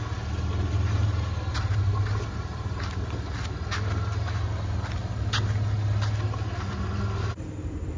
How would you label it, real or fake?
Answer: real